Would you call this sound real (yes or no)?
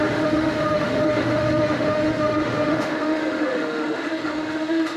no